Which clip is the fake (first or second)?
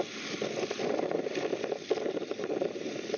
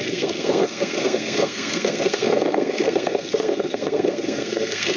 second